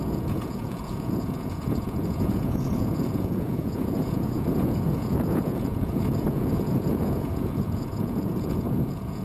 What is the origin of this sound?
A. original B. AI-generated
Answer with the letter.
B